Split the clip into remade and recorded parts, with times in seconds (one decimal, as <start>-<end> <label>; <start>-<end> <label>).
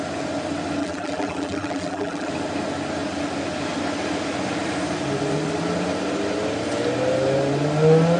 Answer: 0.0-0.8 recorded; 0.8-2.3 remade; 2.3-8.2 recorded